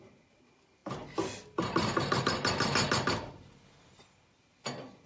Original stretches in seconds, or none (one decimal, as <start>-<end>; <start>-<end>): 0.0-5.1